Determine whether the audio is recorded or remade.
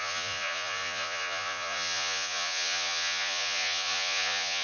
remade